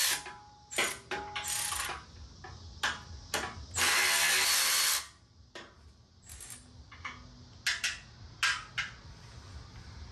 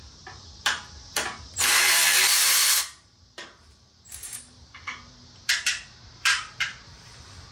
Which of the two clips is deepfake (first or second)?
second